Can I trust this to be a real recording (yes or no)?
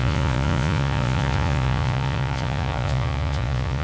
no